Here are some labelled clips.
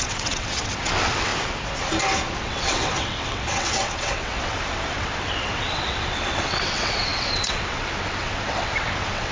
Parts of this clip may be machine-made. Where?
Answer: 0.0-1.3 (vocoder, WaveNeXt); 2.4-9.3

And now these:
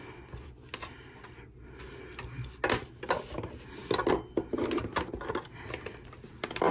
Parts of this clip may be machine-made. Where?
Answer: none